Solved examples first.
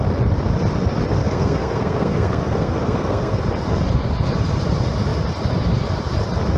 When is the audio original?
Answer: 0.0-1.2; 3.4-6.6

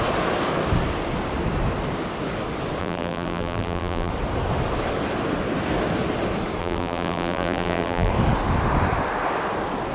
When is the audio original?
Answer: 0.0-2.8; 4.1-6.6; 8.1-9.9

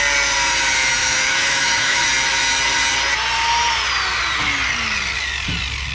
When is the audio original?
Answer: 0.0-1.0; 2.0-5.9

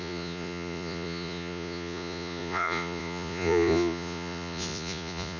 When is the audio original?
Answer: none

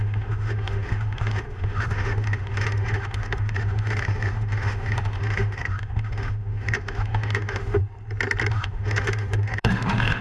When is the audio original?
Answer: 7.8-8.5

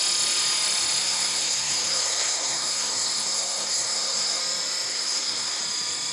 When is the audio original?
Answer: 0.0-1.0; 4.4-4.9; 5.6-6.1